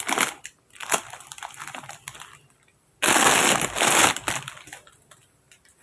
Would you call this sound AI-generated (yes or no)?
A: no